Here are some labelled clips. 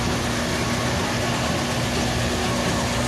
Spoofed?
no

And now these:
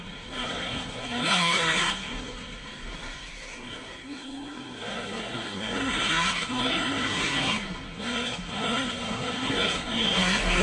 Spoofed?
yes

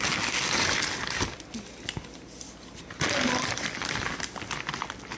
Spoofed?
no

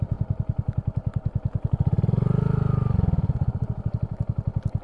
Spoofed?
no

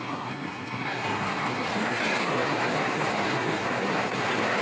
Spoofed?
yes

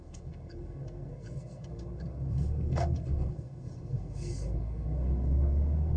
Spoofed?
yes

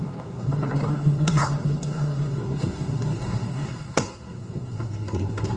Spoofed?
yes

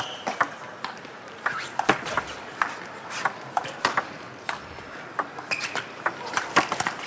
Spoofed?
no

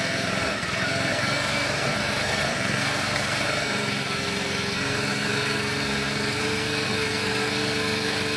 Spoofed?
yes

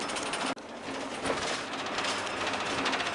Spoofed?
no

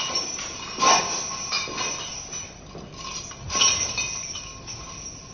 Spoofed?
no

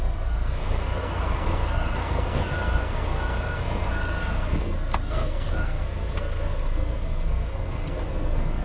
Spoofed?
yes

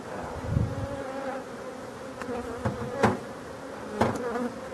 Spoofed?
no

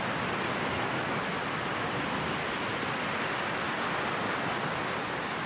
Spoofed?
no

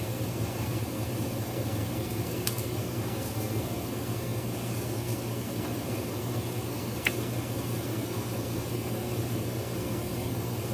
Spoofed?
yes